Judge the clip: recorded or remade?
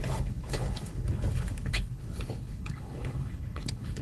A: remade